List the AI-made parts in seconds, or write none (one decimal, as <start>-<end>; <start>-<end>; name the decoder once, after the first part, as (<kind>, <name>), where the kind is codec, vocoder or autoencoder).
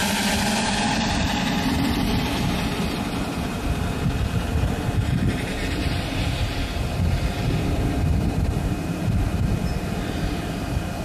4.4-11.0 (vocoder, BigVGAN v2)